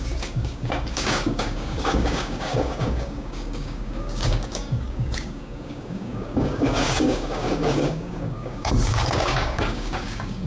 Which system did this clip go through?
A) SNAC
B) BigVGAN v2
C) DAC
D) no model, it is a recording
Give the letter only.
C